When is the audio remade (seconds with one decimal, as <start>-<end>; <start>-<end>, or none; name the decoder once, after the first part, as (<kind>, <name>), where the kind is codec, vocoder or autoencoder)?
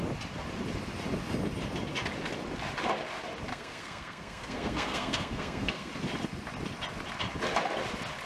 3.5-5.9 (codec, SNAC)